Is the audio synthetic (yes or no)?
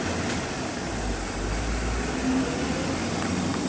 no